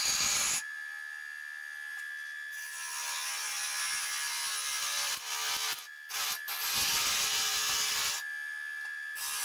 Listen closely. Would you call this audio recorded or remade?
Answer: recorded